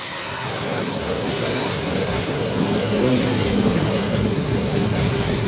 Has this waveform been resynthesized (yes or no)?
yes